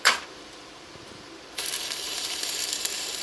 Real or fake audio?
fake